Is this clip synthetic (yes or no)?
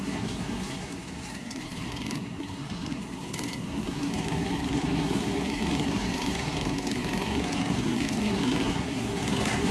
yes